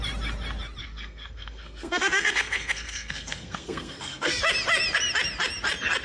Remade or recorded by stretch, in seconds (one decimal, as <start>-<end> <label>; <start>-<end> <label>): 0.0-0.8 recorded; 0.8-4.4 remade; 4.4-6.0 recorded